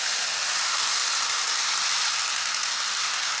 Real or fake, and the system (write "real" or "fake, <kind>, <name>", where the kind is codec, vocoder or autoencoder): real